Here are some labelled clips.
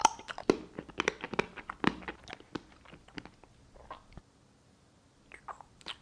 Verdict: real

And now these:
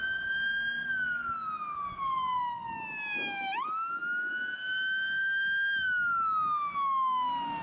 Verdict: real